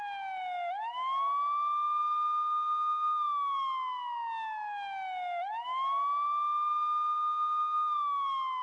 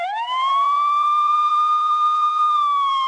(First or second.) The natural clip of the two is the first